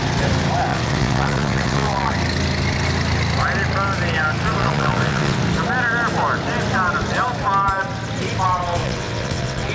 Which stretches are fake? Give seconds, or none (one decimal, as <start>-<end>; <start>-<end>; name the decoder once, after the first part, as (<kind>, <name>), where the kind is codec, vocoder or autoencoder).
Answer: 0.7-2.1 (vocoder, WaveNeXt); 4.6-5.4; 8.8-9.7